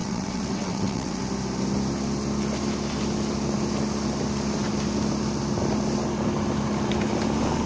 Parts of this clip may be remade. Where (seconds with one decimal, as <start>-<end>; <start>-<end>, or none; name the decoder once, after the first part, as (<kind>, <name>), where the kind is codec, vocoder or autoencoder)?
0.0-1.2 (vocoder, WaveNeXt)